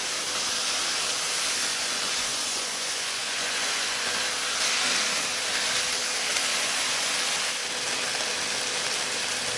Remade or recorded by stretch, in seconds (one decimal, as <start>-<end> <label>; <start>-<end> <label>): 0.0-1.7 recorded; 1.7-4.2 remade; 4.2-6.5 recorded; 6.5-7.1 remade; 7.1-9.6 recorded